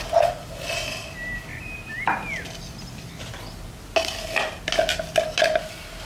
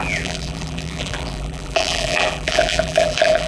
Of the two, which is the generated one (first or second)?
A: second